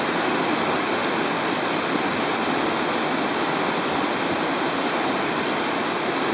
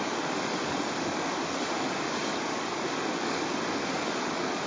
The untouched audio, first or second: first